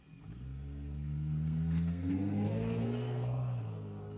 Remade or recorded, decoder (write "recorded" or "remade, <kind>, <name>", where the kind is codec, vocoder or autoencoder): remade, codec, SNAC